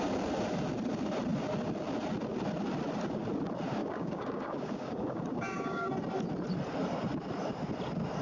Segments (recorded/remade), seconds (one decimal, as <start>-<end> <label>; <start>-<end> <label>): 0.0-3.8 recorded; 3.8-5.9 remade; 5.9-8.2 recorded